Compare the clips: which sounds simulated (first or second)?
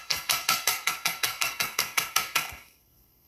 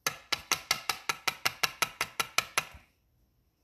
first